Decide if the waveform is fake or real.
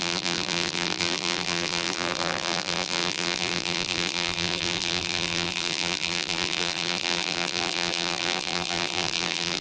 fake